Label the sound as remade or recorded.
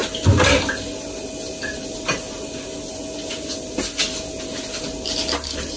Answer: recorded